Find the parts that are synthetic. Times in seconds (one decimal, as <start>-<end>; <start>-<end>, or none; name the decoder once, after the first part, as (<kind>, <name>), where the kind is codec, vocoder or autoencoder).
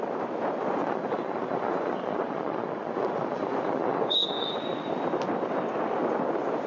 0.8-4.8 (vocoder, Vocos)